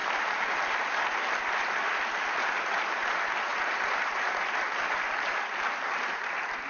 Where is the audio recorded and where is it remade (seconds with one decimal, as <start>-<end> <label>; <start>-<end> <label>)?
0.0-6.7 remade